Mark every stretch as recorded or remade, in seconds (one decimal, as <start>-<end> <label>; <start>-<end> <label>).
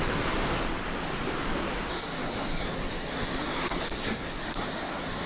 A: 0.0-1.9 recorded; 1.9-5.3 remade